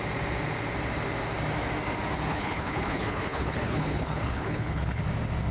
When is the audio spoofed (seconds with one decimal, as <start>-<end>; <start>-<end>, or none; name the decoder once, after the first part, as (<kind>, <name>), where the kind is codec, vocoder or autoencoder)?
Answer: 2.3-5.0 (codec, HILCodec)